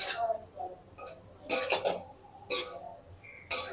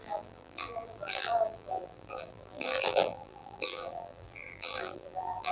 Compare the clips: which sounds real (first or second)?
first